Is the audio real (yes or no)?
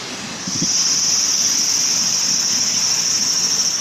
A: yes